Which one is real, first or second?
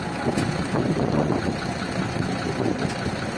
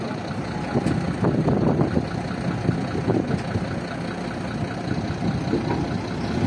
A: second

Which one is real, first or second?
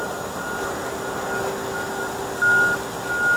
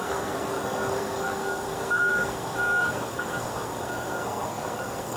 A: first